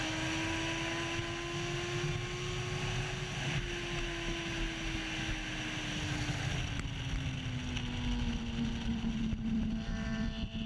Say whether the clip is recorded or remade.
recorded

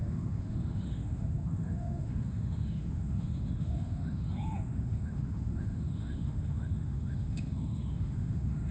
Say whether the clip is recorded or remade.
remade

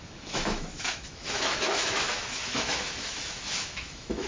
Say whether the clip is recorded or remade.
remade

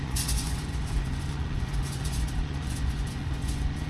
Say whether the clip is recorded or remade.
remade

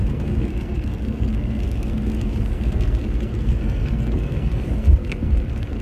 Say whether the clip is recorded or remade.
remade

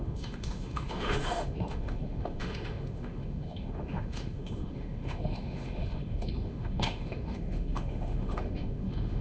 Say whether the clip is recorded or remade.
remade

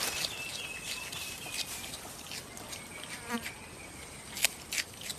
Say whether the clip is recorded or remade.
recorded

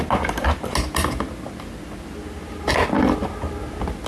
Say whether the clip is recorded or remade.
recorded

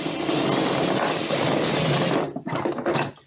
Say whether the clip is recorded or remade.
recorded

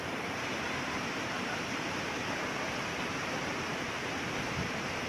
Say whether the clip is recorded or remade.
remade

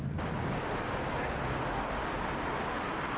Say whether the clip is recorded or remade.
recorded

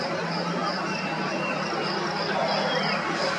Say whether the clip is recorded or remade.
recorded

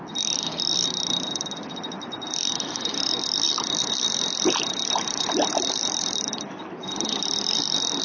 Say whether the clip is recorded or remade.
recorded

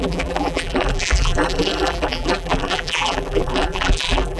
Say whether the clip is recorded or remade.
remade